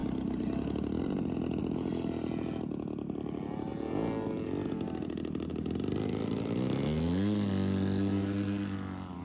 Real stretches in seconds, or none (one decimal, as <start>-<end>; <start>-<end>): 0.0-9.2